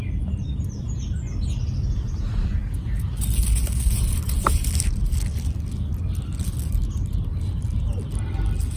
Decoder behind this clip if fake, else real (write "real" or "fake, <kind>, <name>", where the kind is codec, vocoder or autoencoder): real